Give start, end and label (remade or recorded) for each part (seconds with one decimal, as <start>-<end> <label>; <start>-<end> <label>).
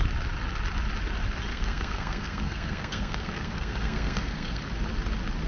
0.0-1.5 recorded; 1.5-4.6 remade; 4.6-5.5 recorded